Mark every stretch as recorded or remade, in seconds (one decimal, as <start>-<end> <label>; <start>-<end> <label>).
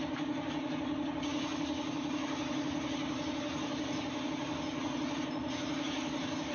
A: 0.0-6.5 recorded